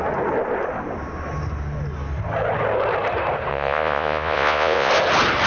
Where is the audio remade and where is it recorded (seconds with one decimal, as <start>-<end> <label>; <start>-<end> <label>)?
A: 0.0-3.5 recorded; 3.5-4.9 remade; 4.9-5.5 recorded